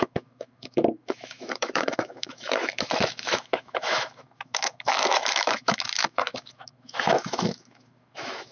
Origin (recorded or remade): remade